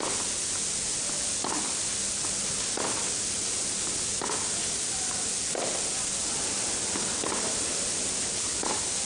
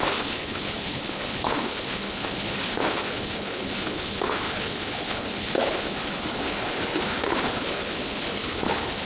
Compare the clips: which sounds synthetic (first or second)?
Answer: second